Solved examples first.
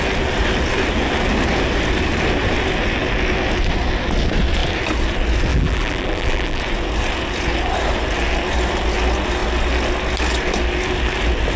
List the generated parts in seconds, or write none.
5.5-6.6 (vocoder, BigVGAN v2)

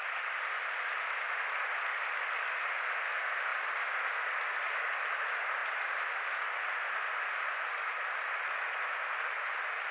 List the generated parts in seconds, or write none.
3.5-4.7 (vocoder, BigVGAN v2); 5.6-8.0

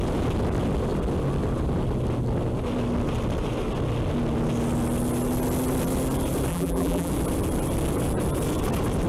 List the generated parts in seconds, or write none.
6.5-7.1 (vocoder, BigVGAN v2)

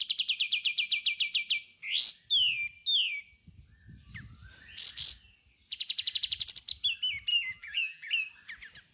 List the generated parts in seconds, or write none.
7.3-8.1 (vocoder, BigVGAN v2)

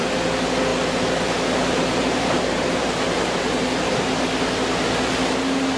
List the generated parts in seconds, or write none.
0.7-4.2 (vocoder, BigVGAN v2)

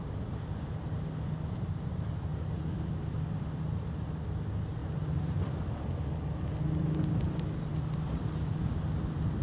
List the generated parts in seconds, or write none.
4.8-5.4 (vocoder, BigVGAN v2)